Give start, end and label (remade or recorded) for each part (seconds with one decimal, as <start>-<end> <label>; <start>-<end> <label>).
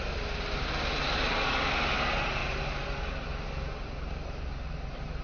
0.0-5.2 recorded